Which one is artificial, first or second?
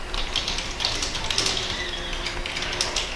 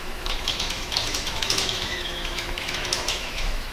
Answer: second